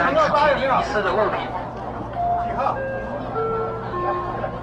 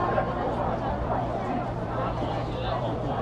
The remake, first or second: second